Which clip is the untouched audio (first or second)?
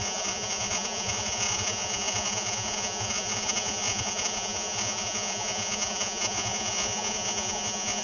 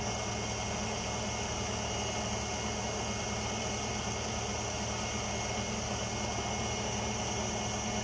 second